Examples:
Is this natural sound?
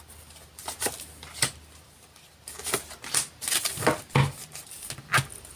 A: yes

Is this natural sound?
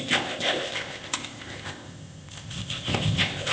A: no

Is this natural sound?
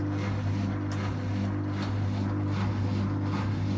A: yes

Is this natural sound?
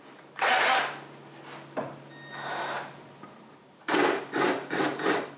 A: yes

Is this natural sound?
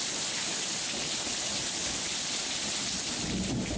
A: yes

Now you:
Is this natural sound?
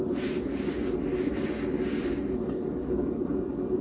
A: yes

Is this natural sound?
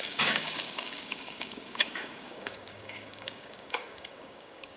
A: no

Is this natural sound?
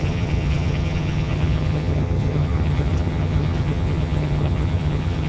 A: no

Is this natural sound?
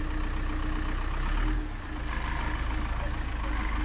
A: yes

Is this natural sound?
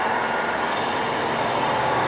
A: yes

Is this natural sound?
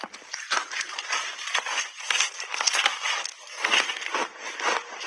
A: yes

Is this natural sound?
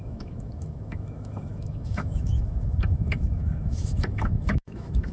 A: no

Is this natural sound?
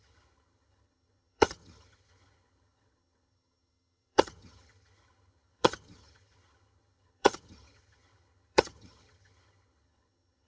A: no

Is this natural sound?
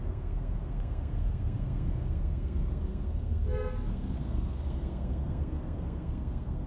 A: no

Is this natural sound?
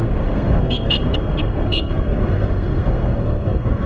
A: no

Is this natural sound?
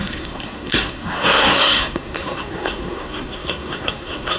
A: no